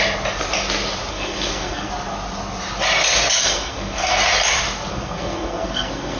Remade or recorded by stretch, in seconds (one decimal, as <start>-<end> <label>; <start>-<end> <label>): 0.0-1.1 recorded; 1.1-1.9 remade; 1.9-3.4 recorded; 3.4-4.2 remade; 4.2-4.9 recorded; 4.9-6.2 remade